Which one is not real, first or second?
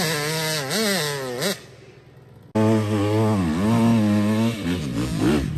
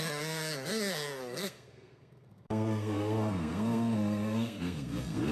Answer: second